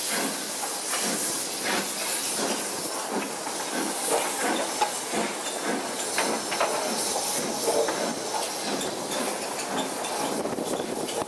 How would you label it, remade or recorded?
recorded